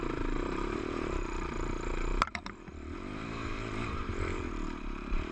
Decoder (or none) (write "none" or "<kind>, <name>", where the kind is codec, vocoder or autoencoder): vocoder, BigVGAN v2